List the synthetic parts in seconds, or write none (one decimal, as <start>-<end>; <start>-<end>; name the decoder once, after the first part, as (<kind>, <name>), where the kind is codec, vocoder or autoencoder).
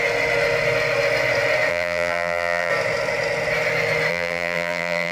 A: 1.7-2.7 (vocoder, BigVGAN v2); 4.1-5.1